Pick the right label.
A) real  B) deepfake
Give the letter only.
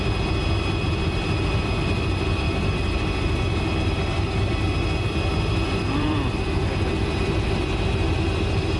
B